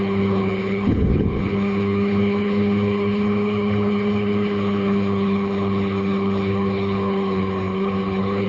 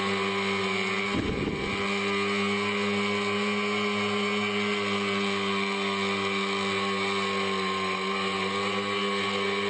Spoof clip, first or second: first